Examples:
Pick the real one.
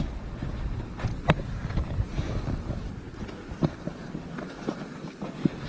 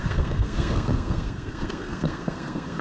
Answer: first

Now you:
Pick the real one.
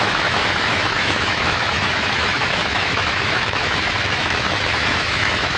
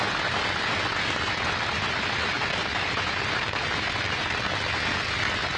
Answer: second